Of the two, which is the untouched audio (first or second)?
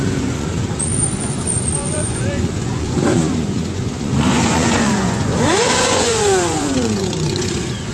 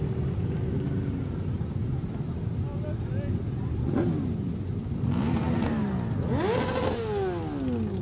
second